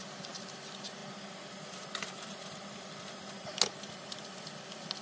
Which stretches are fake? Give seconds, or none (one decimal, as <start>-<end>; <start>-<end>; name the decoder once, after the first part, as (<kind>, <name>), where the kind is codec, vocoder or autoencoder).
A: none